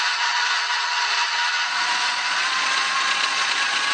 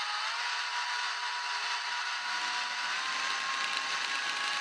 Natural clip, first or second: second